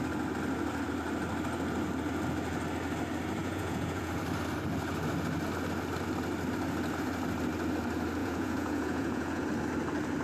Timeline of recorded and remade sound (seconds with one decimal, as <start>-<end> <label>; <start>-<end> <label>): 0.0-3.4 recorded; 3.4-4.1 remade; 4.1-8.2 recorded; 8.2-9.4 remade; 9.4-10.2 recorded